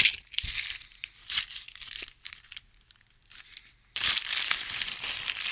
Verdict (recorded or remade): remade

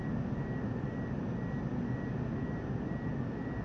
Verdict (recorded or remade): recorded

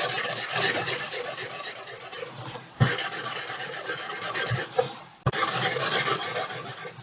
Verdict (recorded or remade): recorded